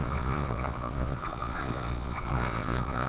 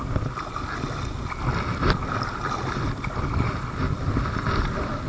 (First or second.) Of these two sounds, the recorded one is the second